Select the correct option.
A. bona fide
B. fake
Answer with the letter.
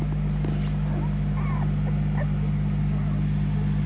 A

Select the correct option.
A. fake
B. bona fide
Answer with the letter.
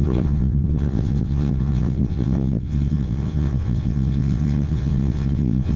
A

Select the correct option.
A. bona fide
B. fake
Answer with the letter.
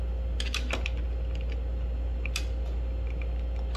A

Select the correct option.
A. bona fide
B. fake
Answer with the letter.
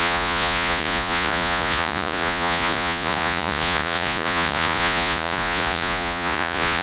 B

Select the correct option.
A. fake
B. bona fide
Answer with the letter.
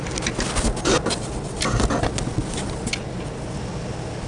B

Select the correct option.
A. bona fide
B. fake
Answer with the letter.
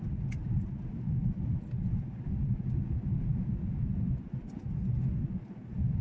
A